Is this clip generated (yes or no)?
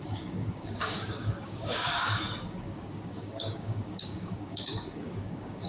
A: yes